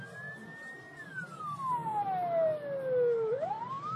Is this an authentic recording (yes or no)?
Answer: yes